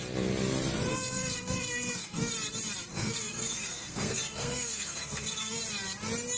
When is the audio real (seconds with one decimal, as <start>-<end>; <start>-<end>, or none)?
0.0-0.9; 2.3-2.9; 5.6-6.4

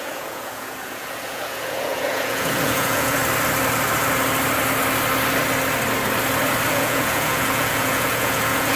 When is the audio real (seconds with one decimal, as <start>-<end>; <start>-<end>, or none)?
3.2-6.7

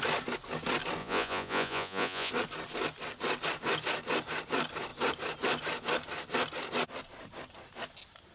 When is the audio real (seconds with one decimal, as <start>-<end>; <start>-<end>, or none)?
0.0-1.0; 2.3-8.3

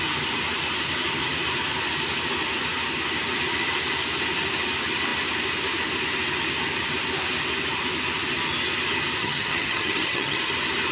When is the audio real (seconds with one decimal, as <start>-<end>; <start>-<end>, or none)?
0.0-9.2; 10.5-10.9